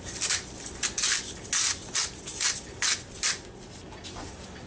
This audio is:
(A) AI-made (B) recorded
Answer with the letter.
B